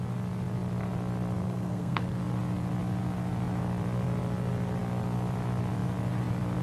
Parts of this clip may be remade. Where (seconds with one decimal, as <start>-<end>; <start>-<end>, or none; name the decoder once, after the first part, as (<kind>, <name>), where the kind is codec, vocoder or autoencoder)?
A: 1.4-2.2 (codec, SNAC)

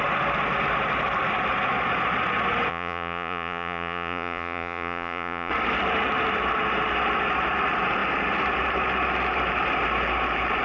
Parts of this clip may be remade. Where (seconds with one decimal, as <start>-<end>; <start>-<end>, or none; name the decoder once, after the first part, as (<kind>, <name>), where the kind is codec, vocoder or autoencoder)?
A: 2.7-5.5 (vocoder, Vocos)

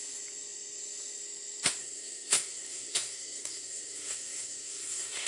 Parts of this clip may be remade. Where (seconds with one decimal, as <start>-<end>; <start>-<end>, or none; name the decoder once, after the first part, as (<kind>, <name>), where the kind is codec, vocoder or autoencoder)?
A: 1.8-5.3 (codec, SNAC)

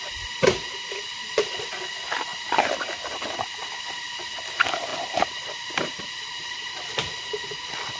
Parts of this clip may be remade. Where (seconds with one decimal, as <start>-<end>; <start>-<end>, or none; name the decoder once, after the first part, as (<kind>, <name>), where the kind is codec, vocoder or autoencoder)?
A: 2.3-3.2 (vocoder, BigVGAN v2); 4.9-6.7